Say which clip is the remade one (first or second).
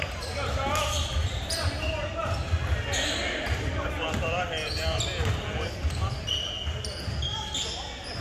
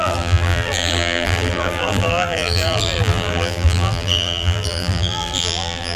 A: second